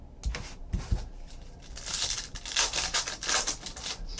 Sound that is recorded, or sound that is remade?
recorded